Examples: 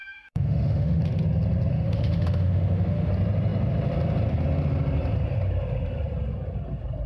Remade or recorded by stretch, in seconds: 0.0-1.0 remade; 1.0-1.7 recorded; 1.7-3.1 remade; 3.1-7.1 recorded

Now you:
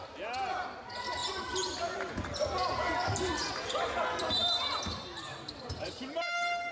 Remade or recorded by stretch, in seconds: 0.0-5.3 recorded; 5.3-6.7 remade

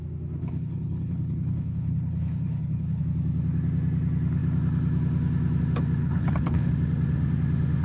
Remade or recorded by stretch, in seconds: 0.0-0.4 recorded; 0.4-3.0 remade; 3.0-6.0 recorded; 6.0-6.7 remade; 6.7-7.8 recorded

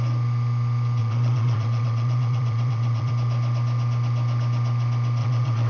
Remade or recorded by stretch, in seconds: 0.0-1.0 recorded; 1.0-3.1 remade; 3.1-5.2 recorded; 5.2-5.7 remade